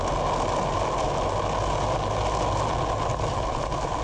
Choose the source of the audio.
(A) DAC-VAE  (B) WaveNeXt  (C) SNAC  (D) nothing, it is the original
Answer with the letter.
D